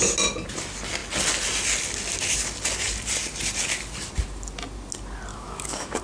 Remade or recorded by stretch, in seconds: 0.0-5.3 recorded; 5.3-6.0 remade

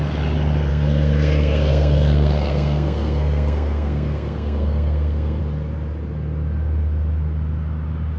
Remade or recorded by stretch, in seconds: 0.0-0.7 recorded; 0.7-5.4 remade; 5.4-8.2 recorded

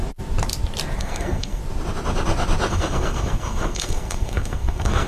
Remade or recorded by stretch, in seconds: 0.0-1.0 recorded; 1.0-1.6 remade; 1.6-2.7 recorded; 2.7-5.1 remade

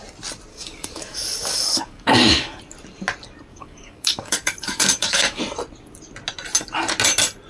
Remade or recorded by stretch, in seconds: 0.0-0.5 recorded; 0.5-2.6 remade; 2.6-3.5 recorded; 3.5-5.4 remade; 5.4-7.5 recorded

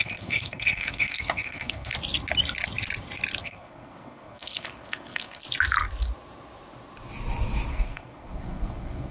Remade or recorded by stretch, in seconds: 0.0-1.9 remade; 1.9-3.4 recorded; 3.4-5.4 remade; 5.4-7.7 recorded; 7.7-9.1 remade

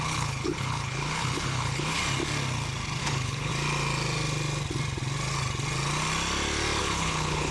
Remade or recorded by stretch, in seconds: 0.0-2.0 remade; 2.0-3.0 recorded; 3.0-3.5 remade; 3.5-6.8 recorded; 6.8-7.5 remade